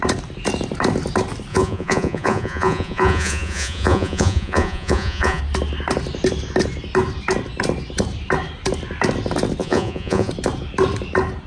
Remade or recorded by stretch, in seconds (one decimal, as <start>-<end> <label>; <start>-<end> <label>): 0.0-1.5 recorded; 1.5-5.4 remade; 5.4-9.6 recorded; 9.6-10.3 remade; 10.3-11.5 recorded